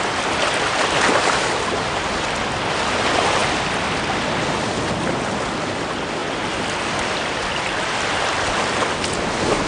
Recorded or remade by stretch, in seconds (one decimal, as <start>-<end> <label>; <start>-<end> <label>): 0.0-9.7 recorded